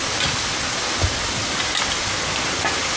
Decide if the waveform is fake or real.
real